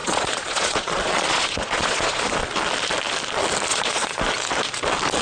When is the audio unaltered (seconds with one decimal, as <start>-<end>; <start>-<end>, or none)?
2.2-3.7; 4.2-5.2